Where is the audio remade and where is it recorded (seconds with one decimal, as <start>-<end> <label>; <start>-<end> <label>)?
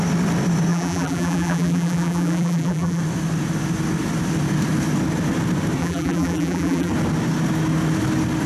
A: 0.0-0.7 recorded; 0.7-3.0 remade; 3.0-5.8 recorded; 5.8-6.9 remade; 6.9-8.5 recorded